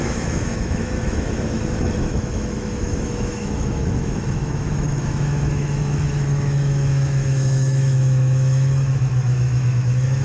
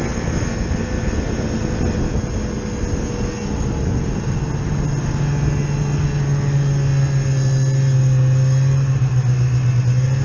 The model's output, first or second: first